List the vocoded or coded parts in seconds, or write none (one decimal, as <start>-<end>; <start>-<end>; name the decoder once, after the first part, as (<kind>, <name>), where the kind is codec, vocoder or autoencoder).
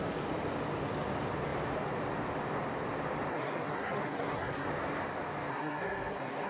3.3-4.7 (codec, SNAC); 5.5-6.5